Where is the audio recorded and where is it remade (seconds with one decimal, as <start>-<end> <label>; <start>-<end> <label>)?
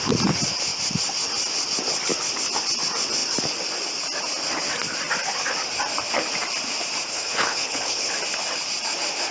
0.0-7.1 recorded; 7.1-8.1 remade; 8.1-9.3 recorded